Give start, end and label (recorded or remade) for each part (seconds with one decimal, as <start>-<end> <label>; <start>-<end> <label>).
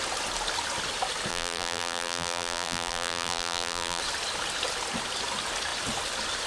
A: 0.0-1.3 recorded; 1.3-4.0 remade; 4.0-6.5 recorded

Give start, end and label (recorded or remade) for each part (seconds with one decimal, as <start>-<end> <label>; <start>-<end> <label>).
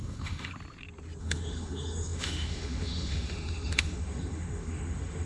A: 0.0-0.5 remade; 0.5-1.2 recorded; 1.2-5.3 remade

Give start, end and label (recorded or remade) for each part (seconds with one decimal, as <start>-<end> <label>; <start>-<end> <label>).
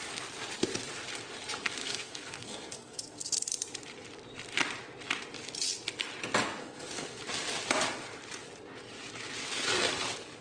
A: 0.0-1.8 recorded; 1.8-3.3 remade; 3.3-6.6 recorded; 6.6-7.2 remade; 7.2-10.4 recorded